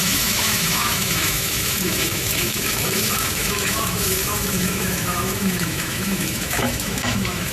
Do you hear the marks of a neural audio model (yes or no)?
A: yes